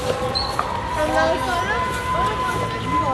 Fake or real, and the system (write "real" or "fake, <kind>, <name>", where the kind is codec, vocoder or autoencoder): real